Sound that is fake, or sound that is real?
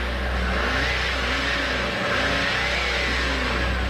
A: real